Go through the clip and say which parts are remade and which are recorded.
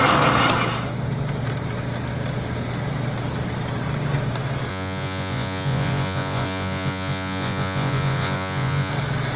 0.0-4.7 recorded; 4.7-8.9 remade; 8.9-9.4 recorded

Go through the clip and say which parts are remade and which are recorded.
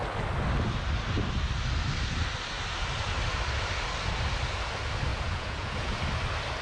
0.0-5.1 recorded; 5.1-6.0 remade; 6.0-6.6 recorded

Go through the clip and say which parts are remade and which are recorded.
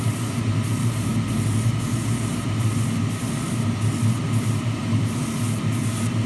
0.0-6.3 recorded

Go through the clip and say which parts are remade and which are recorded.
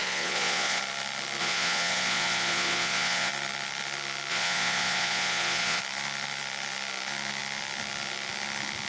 0.0-0.8 remade; 0.8-1.4 recorded; 1.4-3.3 remade; 3.3-4.3 recorded; 4.3-5.8 remade; 5.8-8.9 recorded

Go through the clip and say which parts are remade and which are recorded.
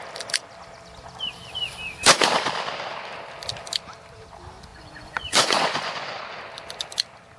0.0-4.7 recorded; 4.7-6.2 remade; 6.2-7.4 recorded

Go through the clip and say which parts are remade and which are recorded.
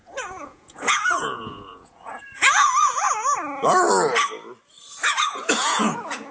0.0-3.0 remade; 3.0-5.2 recorded; 5.2-6.3 remade